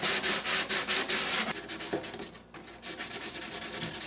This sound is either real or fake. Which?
real